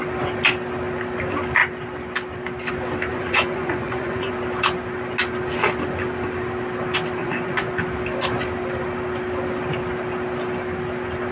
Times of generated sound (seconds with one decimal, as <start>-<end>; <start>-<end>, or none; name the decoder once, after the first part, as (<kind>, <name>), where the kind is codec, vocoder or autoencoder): 3.1-4.3 (vocoder, Vocos); 7.2-7.7